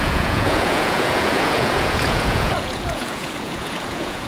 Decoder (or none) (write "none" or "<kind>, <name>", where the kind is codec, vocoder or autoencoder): vocoder, Vocos